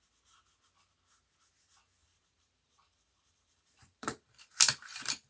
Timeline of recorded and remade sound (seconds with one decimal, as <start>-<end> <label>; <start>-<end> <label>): 0.0-2.0 recorded; 2.0-5.3 remade